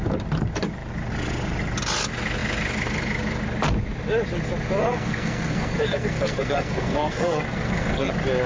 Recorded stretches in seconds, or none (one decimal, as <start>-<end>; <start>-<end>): 0.0-4.8; 8.1-8.5